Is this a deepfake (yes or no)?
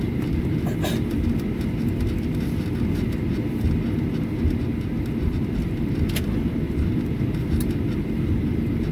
no